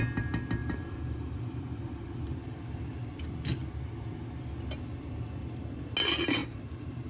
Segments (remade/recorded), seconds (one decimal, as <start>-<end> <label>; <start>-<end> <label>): 0.0-0.6 recorded; 0.6-2.8 remade; 2.8-6.4 recorded; 6.4-7.1 remade